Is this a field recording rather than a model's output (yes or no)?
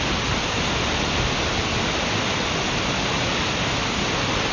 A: yes